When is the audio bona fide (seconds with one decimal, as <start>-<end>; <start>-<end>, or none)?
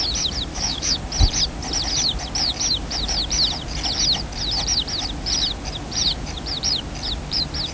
0.0-0.5; 1.0-7.7